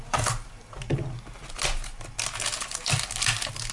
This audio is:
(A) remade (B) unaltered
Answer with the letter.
B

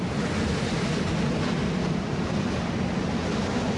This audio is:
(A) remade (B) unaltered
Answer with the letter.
B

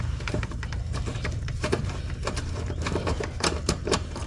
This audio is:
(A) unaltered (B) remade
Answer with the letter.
B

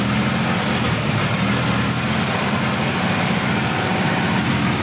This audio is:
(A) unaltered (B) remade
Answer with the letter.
A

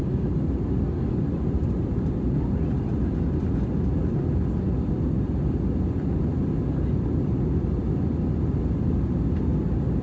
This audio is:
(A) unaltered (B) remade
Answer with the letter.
A